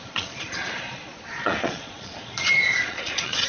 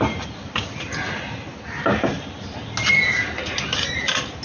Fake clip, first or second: first